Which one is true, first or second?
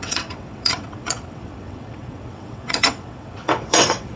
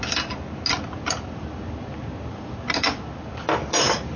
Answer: second